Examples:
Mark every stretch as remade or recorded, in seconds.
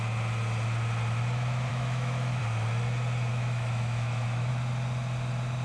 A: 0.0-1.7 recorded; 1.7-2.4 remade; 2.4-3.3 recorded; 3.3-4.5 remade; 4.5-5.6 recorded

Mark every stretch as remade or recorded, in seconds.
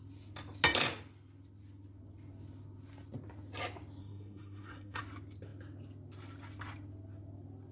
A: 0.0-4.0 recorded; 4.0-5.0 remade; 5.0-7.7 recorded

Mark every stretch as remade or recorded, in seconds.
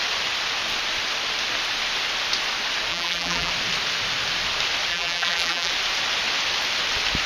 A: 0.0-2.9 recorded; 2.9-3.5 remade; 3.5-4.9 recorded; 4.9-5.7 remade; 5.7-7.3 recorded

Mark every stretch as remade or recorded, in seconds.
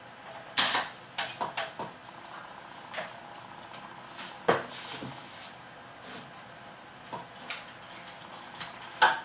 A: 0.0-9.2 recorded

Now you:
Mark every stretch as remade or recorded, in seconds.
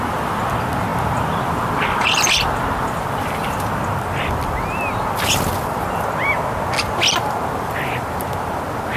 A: 0.0-9.0 recorded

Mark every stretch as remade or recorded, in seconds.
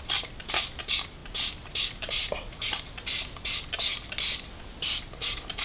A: 0.0-5.6 recorded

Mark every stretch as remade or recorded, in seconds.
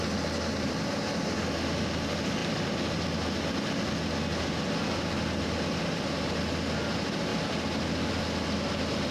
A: 0.0-9.1 recorded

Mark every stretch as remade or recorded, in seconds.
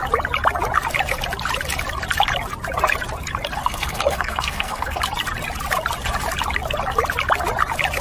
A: 0.0-3.6 recorded; 3.6-5.0 remade; 5.0-8.0 recorded